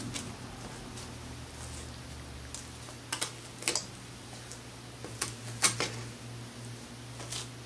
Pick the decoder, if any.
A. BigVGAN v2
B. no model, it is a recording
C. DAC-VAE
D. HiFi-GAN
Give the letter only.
B